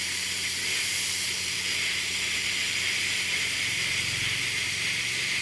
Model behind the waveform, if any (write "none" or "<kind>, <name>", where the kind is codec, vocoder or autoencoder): vocoder, BigVGAN v2